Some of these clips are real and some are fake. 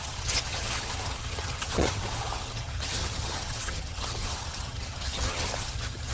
fake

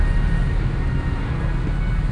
real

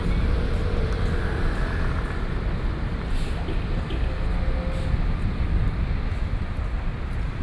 real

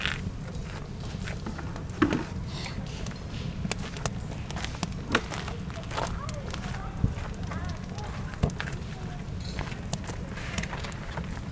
real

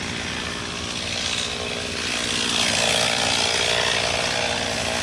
real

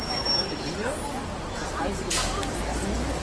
real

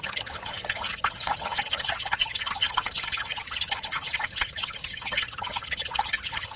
fake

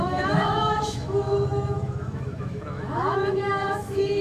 fake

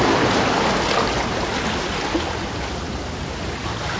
real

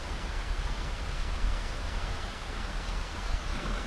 fake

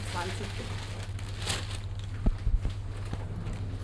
real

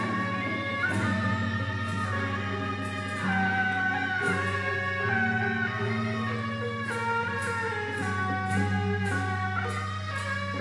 real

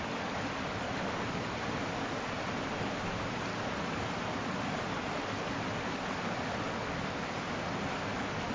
real